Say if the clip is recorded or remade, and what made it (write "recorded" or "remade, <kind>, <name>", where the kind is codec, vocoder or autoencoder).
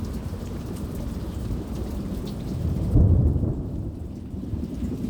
remade, vocoder, BigVGAN v2